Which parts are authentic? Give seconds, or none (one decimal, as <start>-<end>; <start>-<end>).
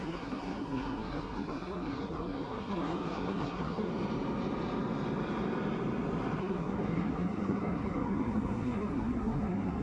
3.9-6.4